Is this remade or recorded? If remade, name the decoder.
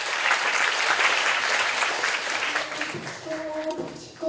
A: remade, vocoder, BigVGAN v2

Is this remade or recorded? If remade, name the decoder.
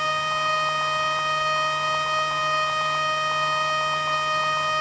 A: recorded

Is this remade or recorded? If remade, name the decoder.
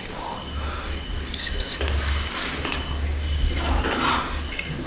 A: recorded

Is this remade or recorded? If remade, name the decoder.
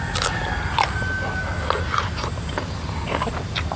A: recorded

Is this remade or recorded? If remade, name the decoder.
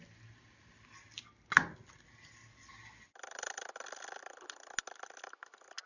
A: recorded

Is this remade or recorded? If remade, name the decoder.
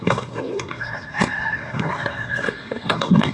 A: remade, codec, SNAC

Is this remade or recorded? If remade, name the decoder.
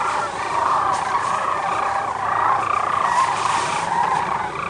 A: recorded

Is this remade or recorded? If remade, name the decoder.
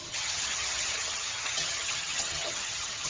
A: remade, vocoder, HiFi-GAN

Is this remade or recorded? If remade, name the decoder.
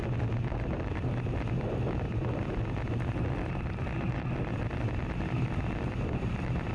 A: recorded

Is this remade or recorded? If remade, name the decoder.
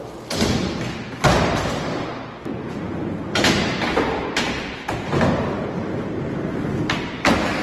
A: recorded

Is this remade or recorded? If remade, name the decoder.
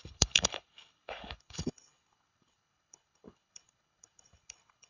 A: remade, codec, HILCodec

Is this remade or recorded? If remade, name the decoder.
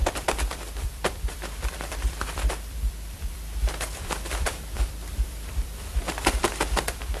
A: remade, vocoder, BigVGAN v2